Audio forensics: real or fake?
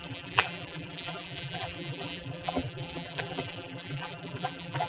fake